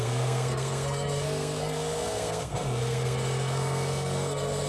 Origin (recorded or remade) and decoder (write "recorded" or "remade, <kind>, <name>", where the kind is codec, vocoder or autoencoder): remade, codec, SNAC